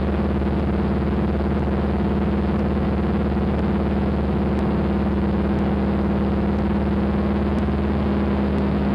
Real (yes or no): yes